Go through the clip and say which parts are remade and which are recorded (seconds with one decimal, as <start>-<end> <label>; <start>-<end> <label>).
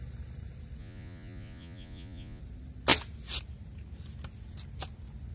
0.0-0.8 recorded; 0.8-2.4 remade; 2.4-5.3 recorded